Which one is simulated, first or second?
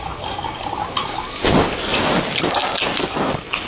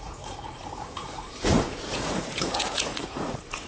second